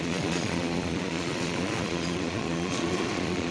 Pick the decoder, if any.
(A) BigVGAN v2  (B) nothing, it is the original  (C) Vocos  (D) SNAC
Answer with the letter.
C